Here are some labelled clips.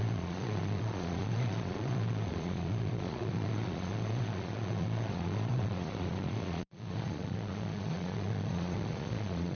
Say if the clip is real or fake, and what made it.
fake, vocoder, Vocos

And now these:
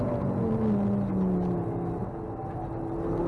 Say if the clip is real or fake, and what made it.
real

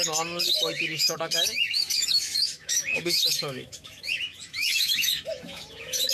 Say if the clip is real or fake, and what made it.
fake, autoencoder, DAC-VAE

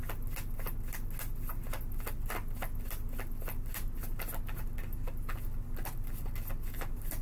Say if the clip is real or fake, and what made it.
real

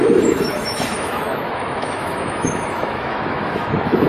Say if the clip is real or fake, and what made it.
fake, autoencoder, DAC-VAE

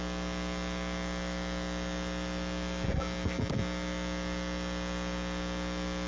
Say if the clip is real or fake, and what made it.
real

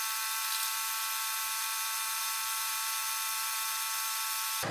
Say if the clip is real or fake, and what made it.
fake, vocoder, BigVGAN v2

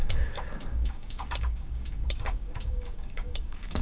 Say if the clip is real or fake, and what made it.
fake, codec, DAC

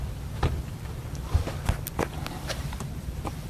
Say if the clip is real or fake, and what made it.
fake, vocoder, BigVGAN v2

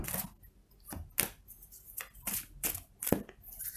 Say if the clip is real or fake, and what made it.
real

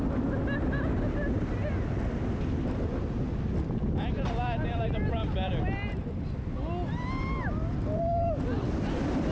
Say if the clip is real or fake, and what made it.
real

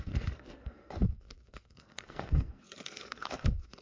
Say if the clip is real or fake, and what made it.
fake, codec, SNAC